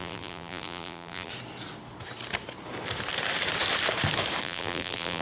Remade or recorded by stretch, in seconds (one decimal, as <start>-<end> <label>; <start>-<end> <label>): 0.0-1.3 remade; 1.3-4.4 recorded; 4.4-5.2 remade